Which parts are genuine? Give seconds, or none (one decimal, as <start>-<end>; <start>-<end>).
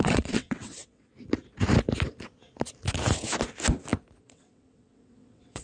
1.1-4.2